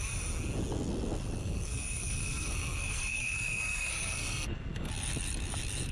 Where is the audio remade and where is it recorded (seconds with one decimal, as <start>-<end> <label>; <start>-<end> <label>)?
0.0-1.4 recorded; 1.4-4.9 remade; 4.9-5.9 recorded